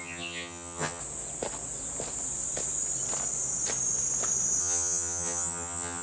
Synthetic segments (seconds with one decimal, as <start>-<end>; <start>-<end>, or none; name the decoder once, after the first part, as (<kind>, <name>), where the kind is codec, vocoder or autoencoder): 0.0-1.0 (vocoder, HiFi-GAN); 4.6-6.0